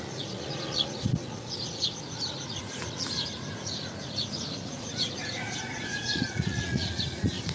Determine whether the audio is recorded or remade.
remade